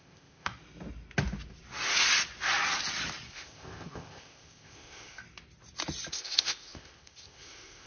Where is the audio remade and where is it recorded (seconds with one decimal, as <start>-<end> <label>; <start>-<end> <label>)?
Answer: 0.0-0.5 remade; 0.5-3.3 recorded; 3.3-5.2 remade; 5.2-6.1 recorded; 6.1-7.9 remade